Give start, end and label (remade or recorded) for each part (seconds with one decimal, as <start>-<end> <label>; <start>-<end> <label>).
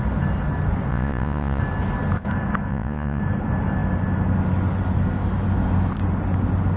0.0-0.9 recorded; 0.9-1.6 remade; 1.6-2.7 recorded; 2.7-3.2 remade; 3.2-6.8 recorded